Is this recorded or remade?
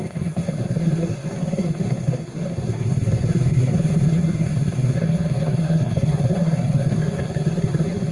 remade